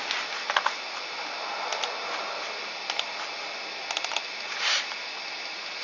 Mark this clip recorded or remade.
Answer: recorded